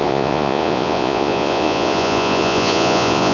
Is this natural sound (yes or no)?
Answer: no